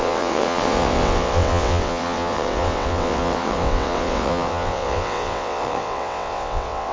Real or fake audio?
fake